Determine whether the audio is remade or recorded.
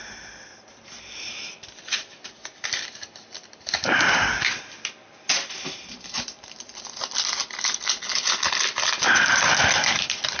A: remade